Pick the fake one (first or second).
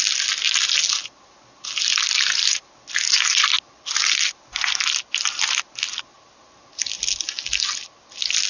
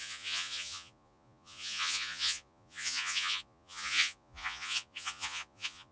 second